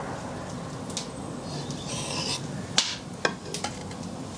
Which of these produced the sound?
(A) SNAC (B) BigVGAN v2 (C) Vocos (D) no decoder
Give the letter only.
D